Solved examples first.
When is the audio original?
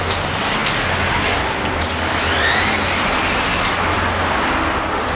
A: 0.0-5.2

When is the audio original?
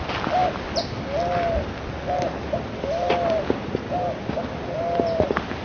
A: 0.0-5.6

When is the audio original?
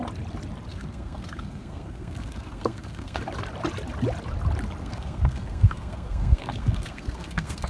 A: 0.0-0.7; 3.2-4.8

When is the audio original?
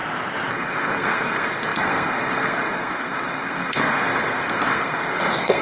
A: 0.0-0.5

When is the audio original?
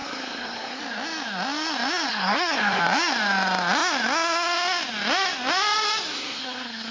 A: 0.8-2.1; 2.8-6.1